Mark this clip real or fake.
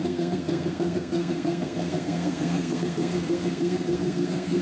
fake